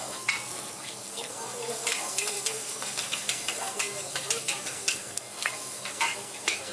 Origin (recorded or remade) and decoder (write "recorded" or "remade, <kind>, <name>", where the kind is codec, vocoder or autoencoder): remade, codec, SNAC